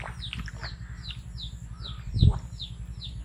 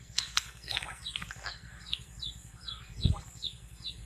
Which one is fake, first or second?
second